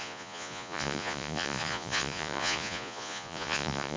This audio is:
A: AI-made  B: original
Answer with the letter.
A